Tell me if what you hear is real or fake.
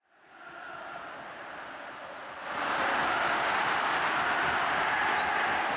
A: real